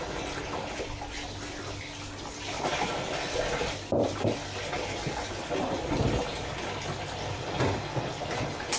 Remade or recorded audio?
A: recorded